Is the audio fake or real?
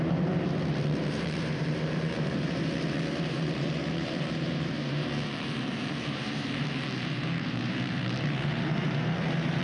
fake